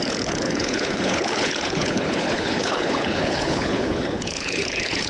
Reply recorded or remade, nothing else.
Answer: remade